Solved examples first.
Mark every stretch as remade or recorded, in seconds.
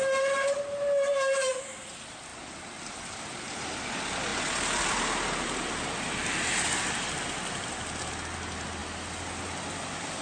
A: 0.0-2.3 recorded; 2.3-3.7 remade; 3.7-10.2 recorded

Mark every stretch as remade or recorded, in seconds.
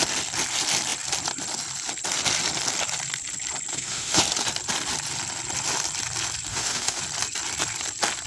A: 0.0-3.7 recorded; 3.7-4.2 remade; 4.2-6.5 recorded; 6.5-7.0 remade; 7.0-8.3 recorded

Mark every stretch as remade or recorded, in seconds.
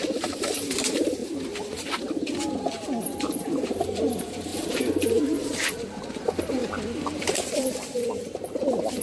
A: 0.0-1.2 remade; 1.2-3.2 recorded; 3.2-4.5 remade; 4.5-5.1 recorded; 5.1-6.6 remade; 6.6-7.2 recorded; 7.2-9.0 remade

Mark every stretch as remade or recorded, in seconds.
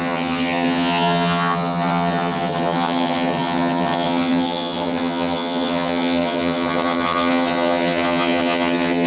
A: 0.0-9.1 remade